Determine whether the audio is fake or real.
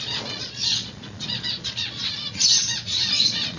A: fake